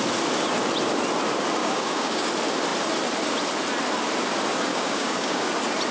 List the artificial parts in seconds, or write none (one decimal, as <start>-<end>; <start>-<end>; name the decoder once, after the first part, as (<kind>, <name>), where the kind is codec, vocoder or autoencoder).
1.6-2.3 (codec, DAC); 4.7-5.5